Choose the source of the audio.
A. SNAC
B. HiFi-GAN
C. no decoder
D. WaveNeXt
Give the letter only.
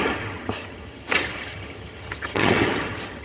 B